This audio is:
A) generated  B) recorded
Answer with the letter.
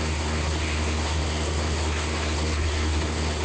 A